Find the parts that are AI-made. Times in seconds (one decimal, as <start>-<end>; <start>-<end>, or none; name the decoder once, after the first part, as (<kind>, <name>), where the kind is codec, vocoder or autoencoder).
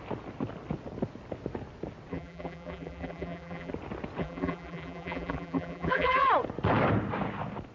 2.1-3.7 (vocoder, BigVGAN v2); 4.2-6.3